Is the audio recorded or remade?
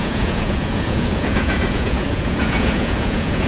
remade